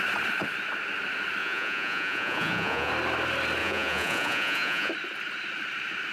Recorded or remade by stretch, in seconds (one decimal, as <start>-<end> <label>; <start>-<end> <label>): 0.0-1.4 recorded; 1.4-2.9 remade; 2.9-3.6 recorded; 3.6-4.9 remade; 4.9-6.1 recorded

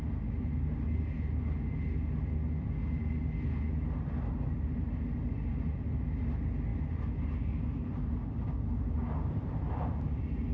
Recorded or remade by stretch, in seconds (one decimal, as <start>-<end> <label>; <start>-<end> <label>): 0.0-10.5 recorded

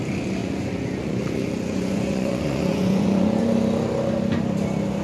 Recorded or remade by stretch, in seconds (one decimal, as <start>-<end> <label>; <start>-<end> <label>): 0.0-0.4 recorded; 0.4-3.4 remade; 3.4-5.0 recorded

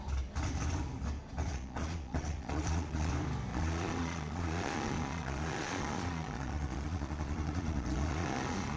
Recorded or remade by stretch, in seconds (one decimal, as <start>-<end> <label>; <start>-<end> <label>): 0.0-1.5 recorded; 1.5-3.1 remade; 3.1-3.5 recorded; 3.5-8.8 remade

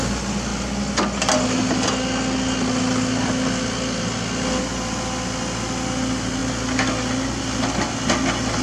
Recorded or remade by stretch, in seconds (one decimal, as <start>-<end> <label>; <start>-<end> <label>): 0.0-8.6 recorded